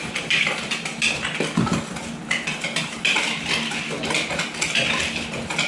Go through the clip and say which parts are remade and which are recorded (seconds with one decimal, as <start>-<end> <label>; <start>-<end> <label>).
0.0-5.7 recorded